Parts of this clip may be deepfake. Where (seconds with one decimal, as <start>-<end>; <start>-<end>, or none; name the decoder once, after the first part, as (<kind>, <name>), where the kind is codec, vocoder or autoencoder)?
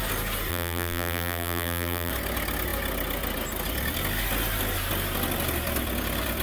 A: 0.5-2.1 (vocoder, BigVGAN v2)